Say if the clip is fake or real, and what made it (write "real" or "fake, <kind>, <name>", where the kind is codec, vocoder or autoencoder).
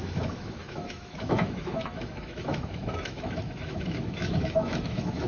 fake, autoencoder, DAC-VAE